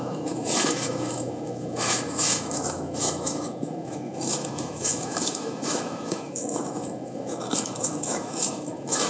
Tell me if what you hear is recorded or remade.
remade